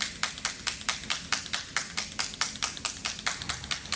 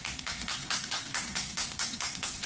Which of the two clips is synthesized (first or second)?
second